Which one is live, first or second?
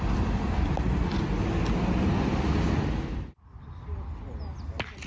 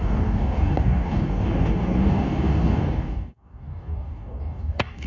first